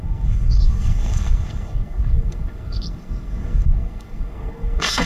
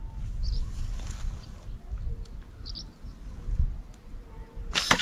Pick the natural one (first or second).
second